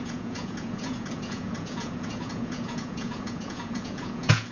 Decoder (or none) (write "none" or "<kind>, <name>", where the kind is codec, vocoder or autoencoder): vocoder, Vocos